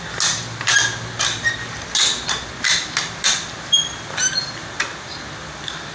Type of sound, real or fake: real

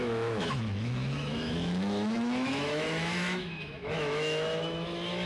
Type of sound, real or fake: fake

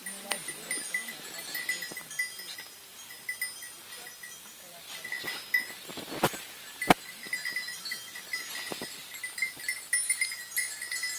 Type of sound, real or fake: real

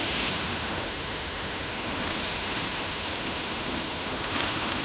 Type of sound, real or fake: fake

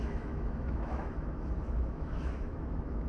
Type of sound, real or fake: fake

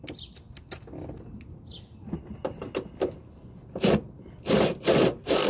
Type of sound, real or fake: real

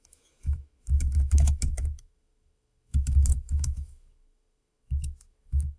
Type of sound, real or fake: fake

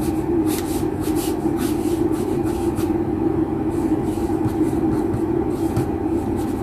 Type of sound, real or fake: real